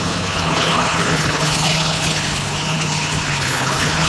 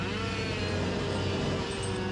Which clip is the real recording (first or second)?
second